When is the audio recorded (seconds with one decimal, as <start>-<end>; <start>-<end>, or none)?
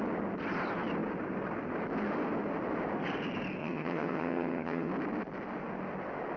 0.0-3.6; 4.9-6.4